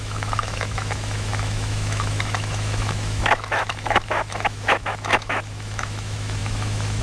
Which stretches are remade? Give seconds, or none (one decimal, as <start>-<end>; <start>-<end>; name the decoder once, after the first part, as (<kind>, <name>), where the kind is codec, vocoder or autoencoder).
0.0-7.0 (autoencoder, DAC-VAE)